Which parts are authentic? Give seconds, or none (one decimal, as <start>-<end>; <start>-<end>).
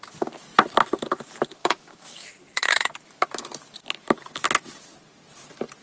0.0-1.6; 2.3-5.8